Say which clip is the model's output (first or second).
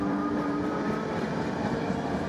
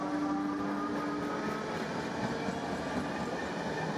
first